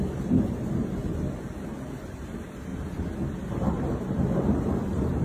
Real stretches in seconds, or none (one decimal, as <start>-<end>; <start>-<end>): 1.0-2.1; 2.7-3.5